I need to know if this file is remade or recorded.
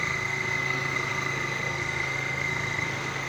remade